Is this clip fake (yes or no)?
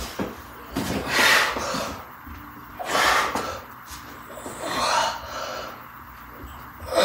no